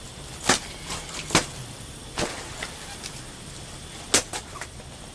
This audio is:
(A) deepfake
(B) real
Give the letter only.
B